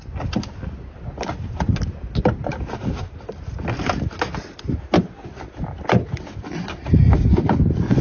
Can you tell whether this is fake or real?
real